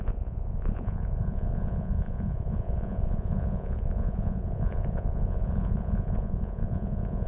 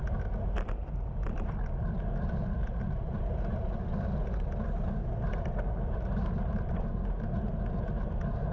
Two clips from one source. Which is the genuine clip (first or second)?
second